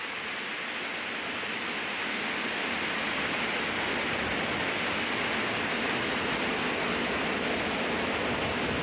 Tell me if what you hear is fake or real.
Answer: real